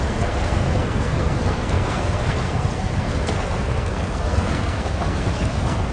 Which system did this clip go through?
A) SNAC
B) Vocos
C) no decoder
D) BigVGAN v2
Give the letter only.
A